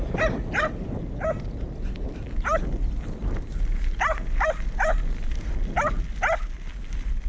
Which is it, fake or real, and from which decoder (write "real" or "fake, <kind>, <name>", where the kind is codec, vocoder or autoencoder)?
real